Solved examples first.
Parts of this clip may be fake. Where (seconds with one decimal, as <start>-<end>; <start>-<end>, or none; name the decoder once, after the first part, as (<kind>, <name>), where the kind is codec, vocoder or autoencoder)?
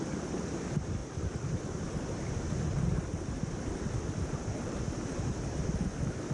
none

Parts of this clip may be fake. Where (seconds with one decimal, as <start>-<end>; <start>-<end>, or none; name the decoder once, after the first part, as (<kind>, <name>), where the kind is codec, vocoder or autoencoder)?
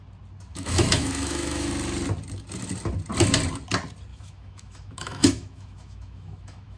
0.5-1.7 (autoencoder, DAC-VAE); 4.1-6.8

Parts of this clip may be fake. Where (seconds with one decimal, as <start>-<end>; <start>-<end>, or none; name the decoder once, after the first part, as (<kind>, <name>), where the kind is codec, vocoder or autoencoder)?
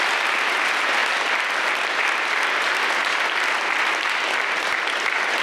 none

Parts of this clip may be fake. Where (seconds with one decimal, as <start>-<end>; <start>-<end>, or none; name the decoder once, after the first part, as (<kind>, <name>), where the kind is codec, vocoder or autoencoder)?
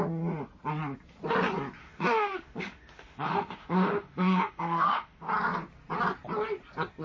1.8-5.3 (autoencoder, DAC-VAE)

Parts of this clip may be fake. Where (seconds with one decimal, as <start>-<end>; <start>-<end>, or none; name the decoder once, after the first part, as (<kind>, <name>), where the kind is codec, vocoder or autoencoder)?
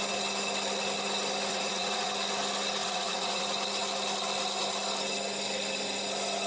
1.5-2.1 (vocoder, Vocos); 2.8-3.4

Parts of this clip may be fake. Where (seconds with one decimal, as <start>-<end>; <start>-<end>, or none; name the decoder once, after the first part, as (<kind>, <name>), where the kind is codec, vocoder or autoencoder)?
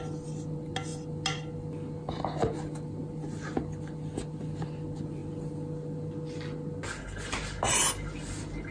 none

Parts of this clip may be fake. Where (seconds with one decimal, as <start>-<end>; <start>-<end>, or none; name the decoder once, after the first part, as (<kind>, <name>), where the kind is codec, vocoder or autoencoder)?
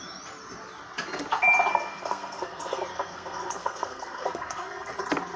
1.7-4.9 (codec, SNAC)